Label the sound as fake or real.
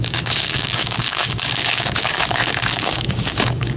fake